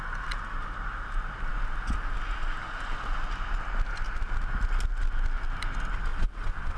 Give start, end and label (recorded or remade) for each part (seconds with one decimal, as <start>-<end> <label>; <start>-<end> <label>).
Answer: 0.0-6.1 recorded; 6.1-6.8 remade